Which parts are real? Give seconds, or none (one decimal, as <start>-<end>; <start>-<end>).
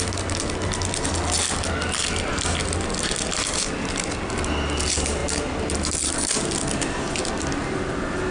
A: 0.0-8.3